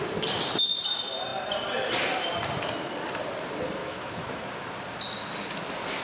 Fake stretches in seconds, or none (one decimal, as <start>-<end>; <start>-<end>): 3.8-4.5